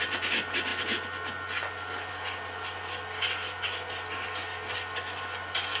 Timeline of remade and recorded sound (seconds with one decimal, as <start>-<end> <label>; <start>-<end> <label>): 0.0-5.8 recorded